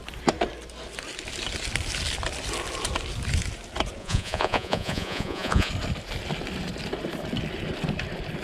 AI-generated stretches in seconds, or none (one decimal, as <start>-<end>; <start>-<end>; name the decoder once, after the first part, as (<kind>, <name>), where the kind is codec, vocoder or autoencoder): 4.0-5.7 (vocoder, Vocos)